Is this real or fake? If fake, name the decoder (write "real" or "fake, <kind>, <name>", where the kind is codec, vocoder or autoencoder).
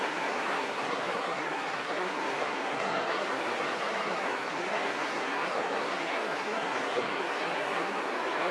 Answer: fake, codec, SNAC